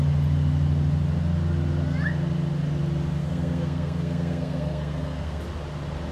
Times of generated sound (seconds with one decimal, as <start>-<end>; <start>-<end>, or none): 3.2-5.4